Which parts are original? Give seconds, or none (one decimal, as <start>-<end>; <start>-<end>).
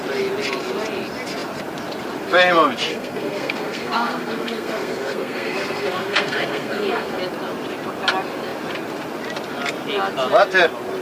0.0-2.9; 7.2-11.0